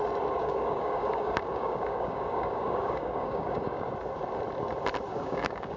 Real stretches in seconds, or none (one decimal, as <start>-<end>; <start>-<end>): 0.0-0.4; 3.9-5.1